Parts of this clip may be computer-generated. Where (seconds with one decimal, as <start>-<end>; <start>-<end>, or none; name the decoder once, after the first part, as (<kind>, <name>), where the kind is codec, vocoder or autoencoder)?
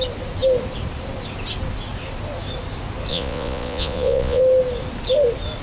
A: 3.1-4.4 (vocoder, Vocos)